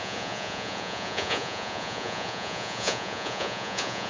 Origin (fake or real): fake